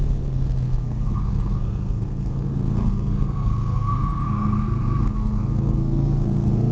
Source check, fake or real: fake